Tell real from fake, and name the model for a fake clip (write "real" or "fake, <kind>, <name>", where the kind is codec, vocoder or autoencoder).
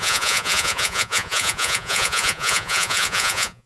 fake, vocoder, Vocos